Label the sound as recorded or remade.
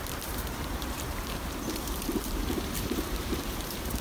remade